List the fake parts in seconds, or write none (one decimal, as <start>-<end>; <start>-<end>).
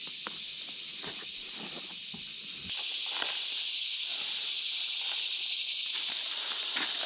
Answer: none